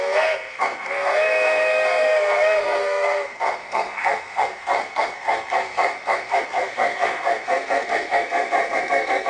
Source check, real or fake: fake